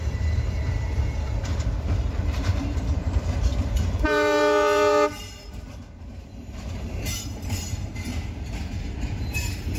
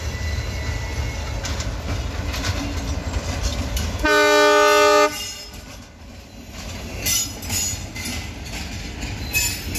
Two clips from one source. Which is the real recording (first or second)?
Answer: second